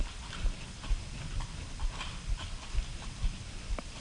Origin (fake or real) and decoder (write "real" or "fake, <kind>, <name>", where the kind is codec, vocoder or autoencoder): real